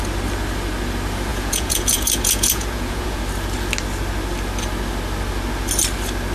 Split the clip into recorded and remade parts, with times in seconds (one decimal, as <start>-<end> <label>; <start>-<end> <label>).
0.0-1.3 recorded; 1.3-3.2 remade; 3.2-6.3 recorded